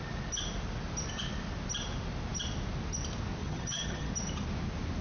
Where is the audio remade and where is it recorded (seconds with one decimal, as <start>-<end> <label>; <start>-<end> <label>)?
0.0-3.4 recorded; 3.4-4.1 remade; 4.1-5.0 recorded